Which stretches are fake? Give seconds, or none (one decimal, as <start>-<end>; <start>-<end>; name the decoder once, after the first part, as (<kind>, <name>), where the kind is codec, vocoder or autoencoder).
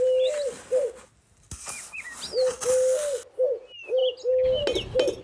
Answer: none